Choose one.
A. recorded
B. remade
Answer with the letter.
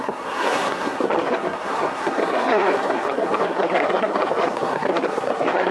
B